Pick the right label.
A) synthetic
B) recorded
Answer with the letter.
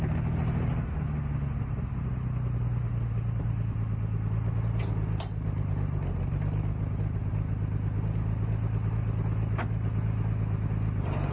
B